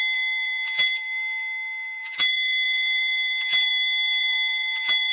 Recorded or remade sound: remade